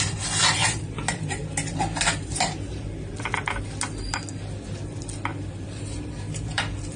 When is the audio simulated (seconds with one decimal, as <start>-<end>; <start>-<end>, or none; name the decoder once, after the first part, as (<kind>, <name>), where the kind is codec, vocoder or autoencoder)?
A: 0.6-3.6 (vocoder, BigVGAN v2); 5.3-6.6